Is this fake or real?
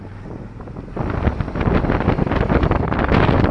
real